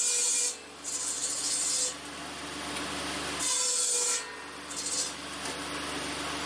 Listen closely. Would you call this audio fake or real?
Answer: real